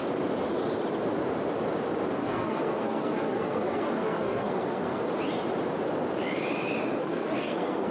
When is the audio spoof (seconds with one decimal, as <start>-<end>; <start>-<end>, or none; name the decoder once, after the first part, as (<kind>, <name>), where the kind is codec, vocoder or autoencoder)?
2.2-5.0 (codec, SNAC); 7.0-7.9